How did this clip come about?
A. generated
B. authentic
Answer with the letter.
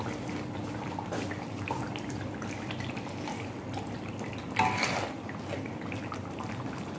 B